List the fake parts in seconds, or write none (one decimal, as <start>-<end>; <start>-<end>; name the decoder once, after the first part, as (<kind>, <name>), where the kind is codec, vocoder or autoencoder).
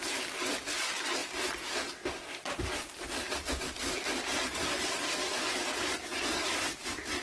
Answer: none